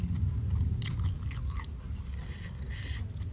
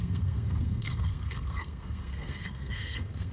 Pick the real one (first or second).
first